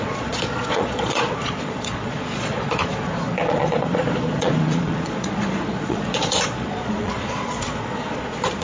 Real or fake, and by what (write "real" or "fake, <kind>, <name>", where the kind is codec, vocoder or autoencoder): fake, vocoder, Vocos